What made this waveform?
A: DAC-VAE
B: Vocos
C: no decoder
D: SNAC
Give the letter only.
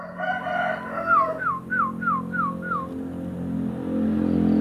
C